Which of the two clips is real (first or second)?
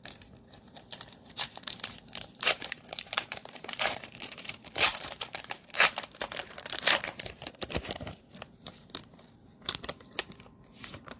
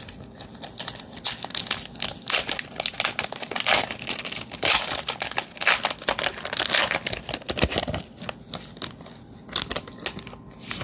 second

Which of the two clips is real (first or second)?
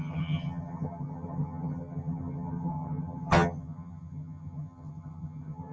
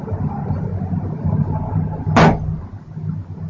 second